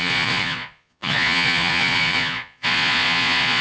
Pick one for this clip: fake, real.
fake